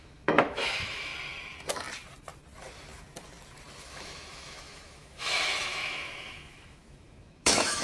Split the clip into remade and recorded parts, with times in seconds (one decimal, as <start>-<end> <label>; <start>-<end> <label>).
0.0-1.1 remade; 1.1-3.8 recorded; 3.8-7.8 remade